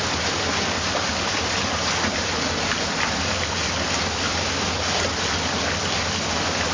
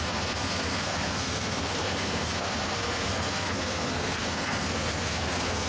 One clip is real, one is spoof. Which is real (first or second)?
first